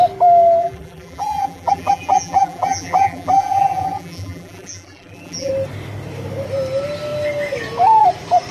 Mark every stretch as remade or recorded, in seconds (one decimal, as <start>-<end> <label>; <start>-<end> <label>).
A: 0.0-0.6 recorded; 0.6-5.5 remade; 5.5-8.5 recorded